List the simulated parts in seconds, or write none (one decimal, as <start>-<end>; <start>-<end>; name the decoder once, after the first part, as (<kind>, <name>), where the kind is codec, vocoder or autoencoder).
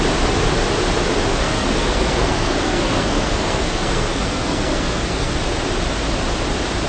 1.3-5.4 (codec, SNAC)